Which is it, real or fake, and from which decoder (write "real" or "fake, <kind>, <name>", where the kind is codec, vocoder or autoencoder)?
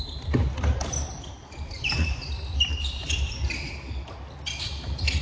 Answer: real